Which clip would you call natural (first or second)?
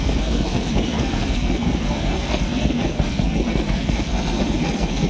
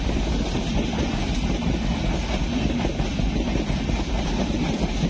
second